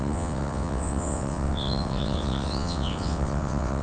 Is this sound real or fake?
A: fake